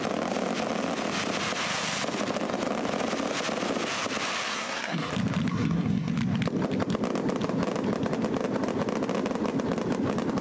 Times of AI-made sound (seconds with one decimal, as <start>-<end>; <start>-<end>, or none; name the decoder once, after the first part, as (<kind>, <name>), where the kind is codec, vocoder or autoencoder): 4.5-5.1 (codec, SNAC); 5.5-6.1

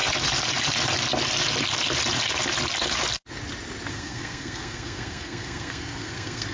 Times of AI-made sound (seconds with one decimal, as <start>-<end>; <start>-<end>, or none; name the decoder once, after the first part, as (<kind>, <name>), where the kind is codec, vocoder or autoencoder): 3.9-6.5 (codec, SNAC)

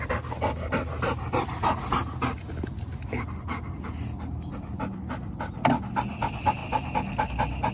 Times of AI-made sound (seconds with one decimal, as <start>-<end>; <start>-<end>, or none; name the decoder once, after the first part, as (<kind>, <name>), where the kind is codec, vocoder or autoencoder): none

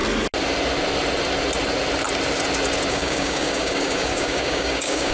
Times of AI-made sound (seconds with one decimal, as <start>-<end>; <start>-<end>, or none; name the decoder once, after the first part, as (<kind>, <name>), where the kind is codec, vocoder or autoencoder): 2.9-5.1 (codec, DAC)

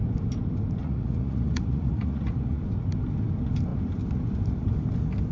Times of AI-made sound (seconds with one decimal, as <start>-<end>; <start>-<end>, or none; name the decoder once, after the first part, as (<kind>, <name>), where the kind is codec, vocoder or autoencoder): 0.8-2.6 (vocoder, Vocos)